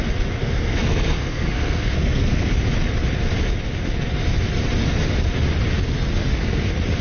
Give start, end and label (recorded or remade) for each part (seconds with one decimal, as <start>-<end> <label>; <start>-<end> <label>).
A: 0.0-0.4 recorded; 0.4-2.5 remade; 2.5-7.0 recorded